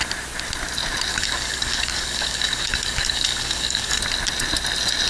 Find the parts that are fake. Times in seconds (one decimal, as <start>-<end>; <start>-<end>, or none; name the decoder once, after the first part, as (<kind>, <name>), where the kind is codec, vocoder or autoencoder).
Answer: 1.1-4.0 (codec, DAC)